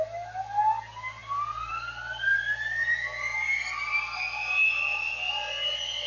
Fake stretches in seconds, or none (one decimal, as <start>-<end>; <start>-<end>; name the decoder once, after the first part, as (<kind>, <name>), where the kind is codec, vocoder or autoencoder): none